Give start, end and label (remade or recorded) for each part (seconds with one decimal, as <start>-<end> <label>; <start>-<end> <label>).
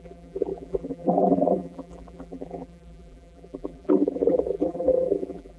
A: 0.0-5.6 remade